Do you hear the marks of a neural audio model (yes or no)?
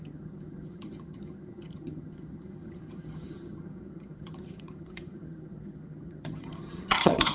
yes